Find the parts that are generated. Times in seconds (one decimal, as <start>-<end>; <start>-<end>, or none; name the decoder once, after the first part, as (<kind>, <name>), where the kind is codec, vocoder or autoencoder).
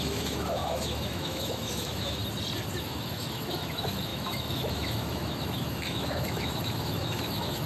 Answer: 0.0-2.2 (autoencoder, DAC-VAE); 2.8-7.7